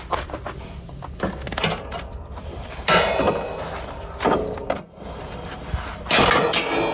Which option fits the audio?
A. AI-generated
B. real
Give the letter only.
B